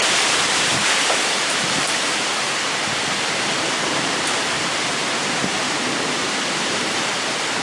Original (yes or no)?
no